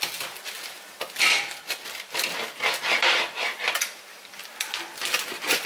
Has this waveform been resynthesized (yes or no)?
no